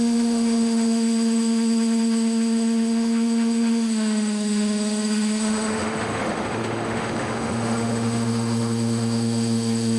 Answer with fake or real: fake